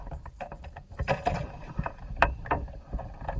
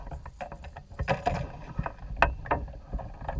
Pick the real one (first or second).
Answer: second